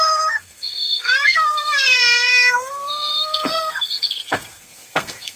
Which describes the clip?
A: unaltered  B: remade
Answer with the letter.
B